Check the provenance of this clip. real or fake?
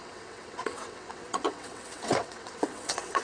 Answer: fake